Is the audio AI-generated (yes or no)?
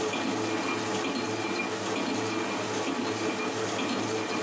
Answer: no